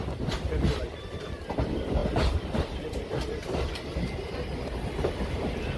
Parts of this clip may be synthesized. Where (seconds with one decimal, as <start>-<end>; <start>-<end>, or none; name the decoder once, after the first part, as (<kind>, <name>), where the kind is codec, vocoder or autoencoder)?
none